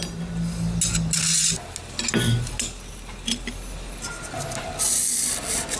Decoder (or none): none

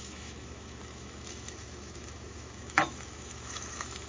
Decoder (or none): autoencoder, DAC-VAE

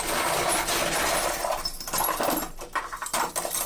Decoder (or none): none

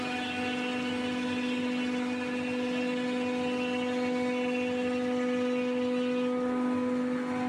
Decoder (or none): none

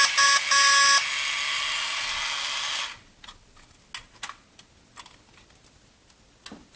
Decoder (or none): none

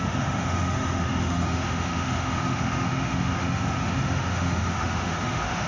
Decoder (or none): autoencoder, DAC-VAE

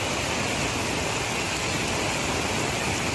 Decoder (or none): none